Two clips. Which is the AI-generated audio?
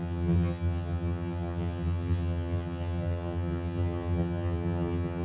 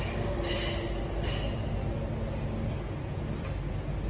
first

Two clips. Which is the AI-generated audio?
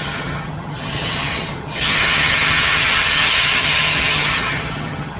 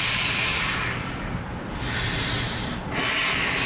first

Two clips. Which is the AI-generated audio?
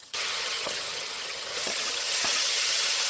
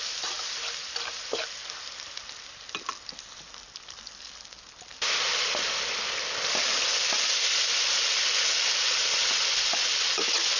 first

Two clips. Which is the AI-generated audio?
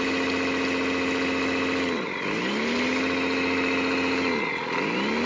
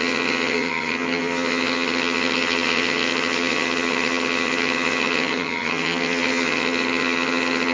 second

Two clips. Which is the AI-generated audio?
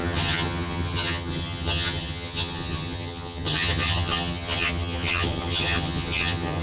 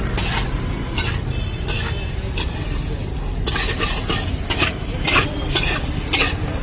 first